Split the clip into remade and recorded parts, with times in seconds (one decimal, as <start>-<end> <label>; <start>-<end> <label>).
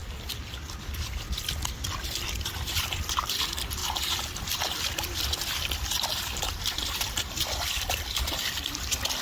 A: 0.0-1.3 recorded; 1.3-9.2 remade